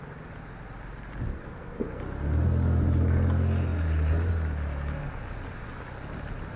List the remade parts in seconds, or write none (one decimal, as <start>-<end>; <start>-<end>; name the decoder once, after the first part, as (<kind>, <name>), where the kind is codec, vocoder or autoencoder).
1.3-2.0 (codec, SNAC)